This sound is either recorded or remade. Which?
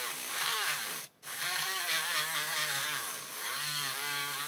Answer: remade